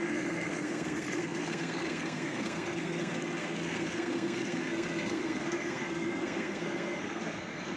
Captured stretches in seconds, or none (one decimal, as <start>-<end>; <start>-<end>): none